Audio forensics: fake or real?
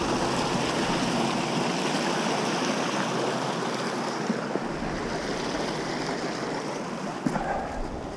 real